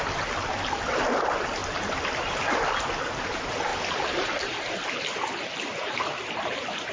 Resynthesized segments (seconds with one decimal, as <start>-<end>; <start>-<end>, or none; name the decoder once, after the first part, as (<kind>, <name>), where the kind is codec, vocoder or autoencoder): none